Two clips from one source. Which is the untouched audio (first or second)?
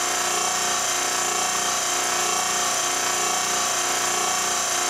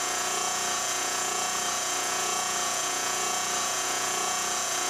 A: first